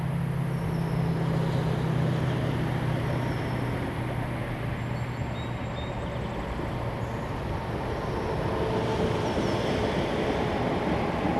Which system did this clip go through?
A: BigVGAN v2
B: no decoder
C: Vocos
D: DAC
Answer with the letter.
B